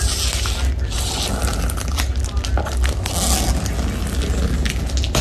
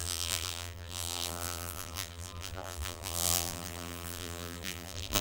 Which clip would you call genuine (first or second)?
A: first